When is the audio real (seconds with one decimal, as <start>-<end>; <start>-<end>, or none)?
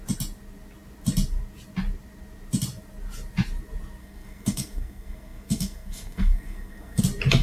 0.0-4.0; 7.0-7.4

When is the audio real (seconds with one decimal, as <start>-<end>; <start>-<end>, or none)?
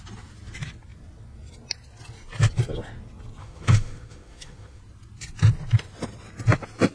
0.0-3.4; 4.8-6.9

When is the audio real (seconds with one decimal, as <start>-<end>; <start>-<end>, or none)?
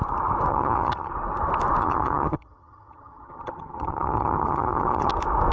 0.0-0.5; 1.1-1.8; 5.1-5.5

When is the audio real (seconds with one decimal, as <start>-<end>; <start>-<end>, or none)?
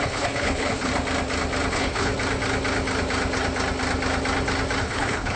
0.9-1.7; 2.1-4.8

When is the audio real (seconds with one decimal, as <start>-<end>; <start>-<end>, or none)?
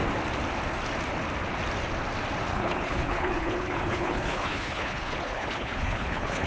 0.0-2.5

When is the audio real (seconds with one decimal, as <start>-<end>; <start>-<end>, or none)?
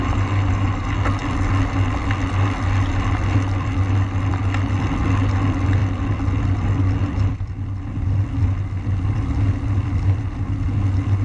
0.0-11.2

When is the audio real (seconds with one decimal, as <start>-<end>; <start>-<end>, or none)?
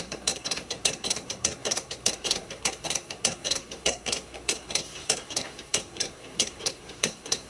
none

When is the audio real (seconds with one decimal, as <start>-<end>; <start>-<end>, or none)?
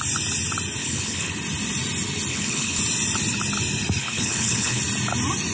0.0-0.8; 1.3-2.3; 2.8-4.0; 4.8-5.5